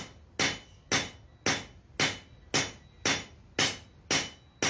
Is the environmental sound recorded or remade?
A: recorded